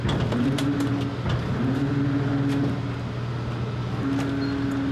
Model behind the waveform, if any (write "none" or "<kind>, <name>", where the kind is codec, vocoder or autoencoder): none